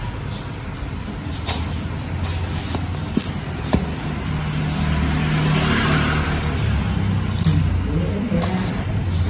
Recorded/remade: recorded